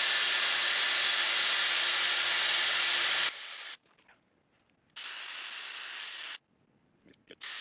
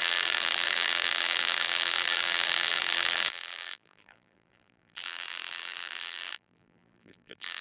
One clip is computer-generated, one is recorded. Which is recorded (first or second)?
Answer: first